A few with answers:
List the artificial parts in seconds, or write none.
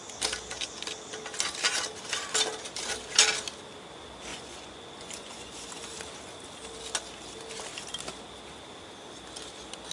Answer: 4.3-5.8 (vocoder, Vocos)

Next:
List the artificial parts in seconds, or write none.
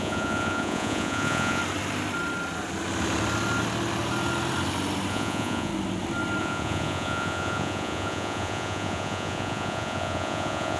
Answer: 0.0-1.6 (vocoder, Vocos); 5.1-5.7; 6.4-10.8